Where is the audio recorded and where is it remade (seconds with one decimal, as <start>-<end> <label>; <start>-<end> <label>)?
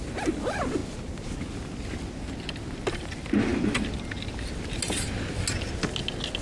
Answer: 0.0-6.4 recorded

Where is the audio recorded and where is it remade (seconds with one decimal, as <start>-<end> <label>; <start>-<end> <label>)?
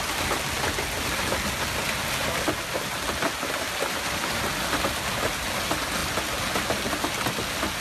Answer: 0.0-7.8 recorded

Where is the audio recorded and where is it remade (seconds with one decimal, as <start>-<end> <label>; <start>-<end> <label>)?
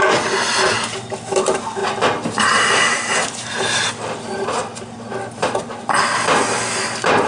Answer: 0.0-7.3 recorded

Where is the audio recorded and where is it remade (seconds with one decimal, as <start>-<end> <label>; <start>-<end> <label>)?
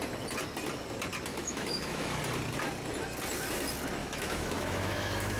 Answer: 0.0-1.3 recorded; 1.3-2.2 remade; 2.2-4.0 recorded; 4.0-5.4 remade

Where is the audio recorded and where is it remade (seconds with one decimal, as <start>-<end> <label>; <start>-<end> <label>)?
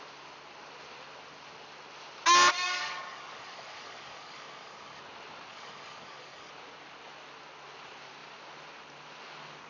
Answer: 0.0-2.6 recorded; 2.6-5.0 remade; 5.0-5.5 recorded; 5.5-6.5 remade; 6.5-9.7 recorded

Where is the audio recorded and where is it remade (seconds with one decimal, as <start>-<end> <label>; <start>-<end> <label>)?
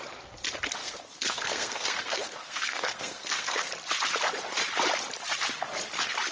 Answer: 0.0-0.8 recorded; 0.8-3.7 remade; 3.7-6.3 recorded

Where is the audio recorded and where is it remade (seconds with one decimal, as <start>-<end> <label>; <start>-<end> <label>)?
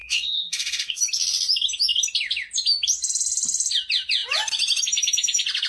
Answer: 0.0-1.0 remade; 1.0-5.7 recorded